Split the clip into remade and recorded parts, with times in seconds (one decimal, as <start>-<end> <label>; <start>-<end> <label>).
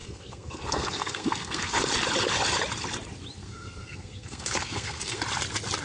0.0-1.8 remade; 1.8-3.4 recorded; 3.4-5.2 remade; 5.2-5.8 recorded